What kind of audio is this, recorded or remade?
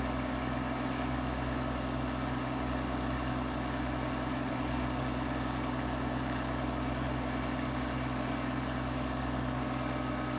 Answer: remade